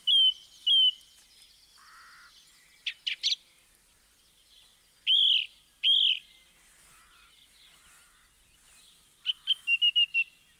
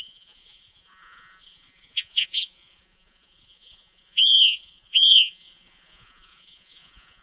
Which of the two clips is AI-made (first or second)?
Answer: second